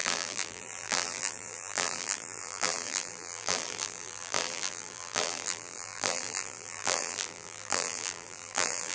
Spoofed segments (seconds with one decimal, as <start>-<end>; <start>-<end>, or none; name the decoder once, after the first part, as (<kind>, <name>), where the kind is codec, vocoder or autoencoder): 0.0-8.9 (vocoder, BigVGAN v2)